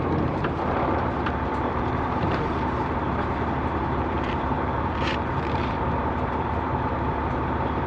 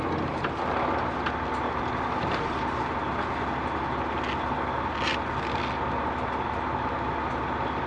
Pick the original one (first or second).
second